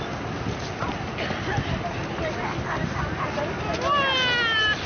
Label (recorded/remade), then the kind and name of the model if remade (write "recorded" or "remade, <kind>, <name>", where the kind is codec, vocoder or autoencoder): recorded